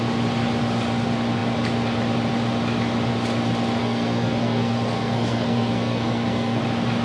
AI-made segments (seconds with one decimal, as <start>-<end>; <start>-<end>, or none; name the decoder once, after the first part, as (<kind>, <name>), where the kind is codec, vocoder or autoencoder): 3.8-6.6 (codec, SNAC)